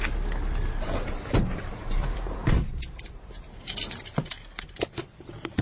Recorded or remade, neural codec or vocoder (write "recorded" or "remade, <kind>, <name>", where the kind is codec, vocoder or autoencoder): remade, vocoder, BigVGAN v2